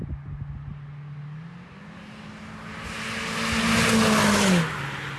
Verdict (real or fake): real